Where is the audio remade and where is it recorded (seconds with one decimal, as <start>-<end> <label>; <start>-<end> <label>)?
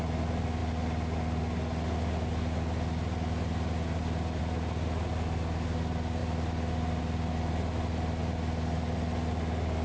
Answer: 0.0-9.8 recorded